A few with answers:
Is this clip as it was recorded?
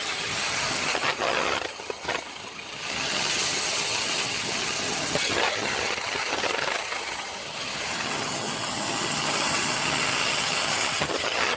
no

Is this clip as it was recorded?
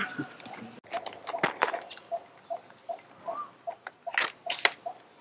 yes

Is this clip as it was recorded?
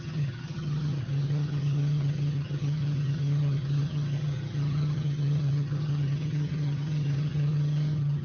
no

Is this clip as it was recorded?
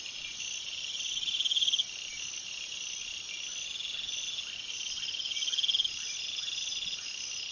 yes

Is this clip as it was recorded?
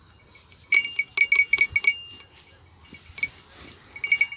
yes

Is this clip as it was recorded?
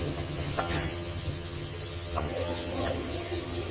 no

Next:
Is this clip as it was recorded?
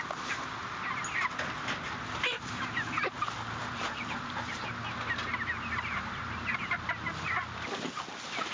yes